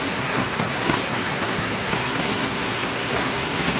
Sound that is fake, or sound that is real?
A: fake